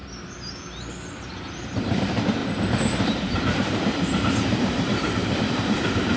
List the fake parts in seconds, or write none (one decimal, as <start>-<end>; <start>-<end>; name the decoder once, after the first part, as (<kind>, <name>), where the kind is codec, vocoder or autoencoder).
1.2-2.4 (vocoder, BigVGAN v2); 3.1-5.2